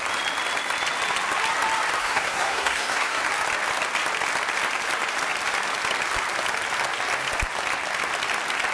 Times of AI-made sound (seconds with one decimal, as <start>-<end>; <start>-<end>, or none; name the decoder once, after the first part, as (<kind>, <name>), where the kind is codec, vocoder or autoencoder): 2.0-3.2 (codec, SNAC)